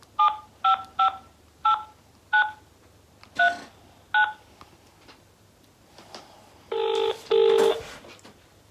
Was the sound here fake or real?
real